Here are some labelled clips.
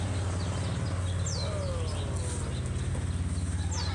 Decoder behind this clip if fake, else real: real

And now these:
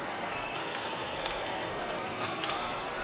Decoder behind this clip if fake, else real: fake, codec, SNAC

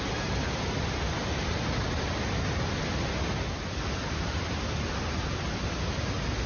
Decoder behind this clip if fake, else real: real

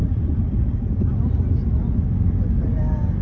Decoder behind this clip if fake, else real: real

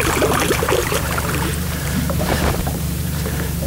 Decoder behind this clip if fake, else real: fake, vocoder, BigVGAN v2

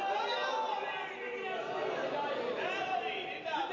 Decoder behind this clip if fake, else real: real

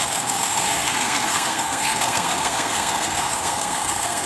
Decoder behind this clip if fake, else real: fake, codec, SNAC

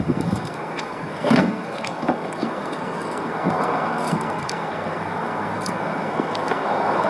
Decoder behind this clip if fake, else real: fake, codec, SNAC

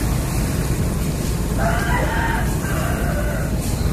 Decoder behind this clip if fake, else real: fake, vocoder, BigVGAN v2